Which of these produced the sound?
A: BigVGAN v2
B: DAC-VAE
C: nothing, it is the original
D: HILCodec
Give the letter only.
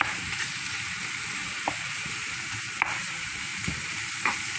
A